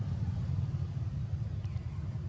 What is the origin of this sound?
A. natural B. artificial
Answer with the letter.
A